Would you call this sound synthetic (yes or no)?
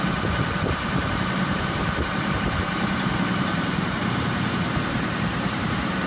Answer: yes